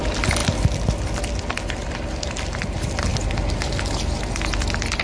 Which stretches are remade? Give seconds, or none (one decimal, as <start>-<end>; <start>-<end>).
none